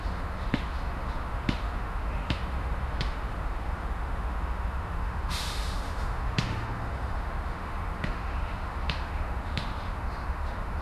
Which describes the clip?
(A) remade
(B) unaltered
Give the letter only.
A